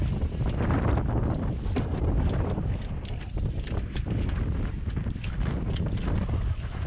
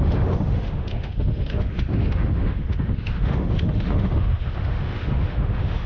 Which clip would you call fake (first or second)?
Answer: second